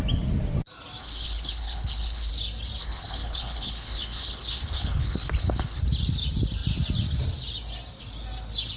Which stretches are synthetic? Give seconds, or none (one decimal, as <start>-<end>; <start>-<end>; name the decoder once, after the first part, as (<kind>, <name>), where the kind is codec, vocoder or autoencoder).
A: 1.0-2.3 (codec, HILCodec); 2.8-5.8